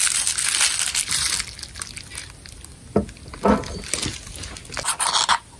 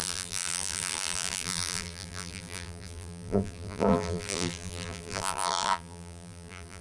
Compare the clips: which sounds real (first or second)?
first